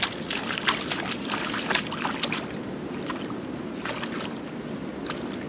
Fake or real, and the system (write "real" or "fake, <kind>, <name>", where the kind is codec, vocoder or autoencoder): real